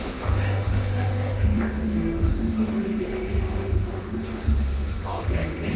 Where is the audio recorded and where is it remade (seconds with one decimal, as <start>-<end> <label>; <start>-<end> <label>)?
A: 0.0-5.8 remade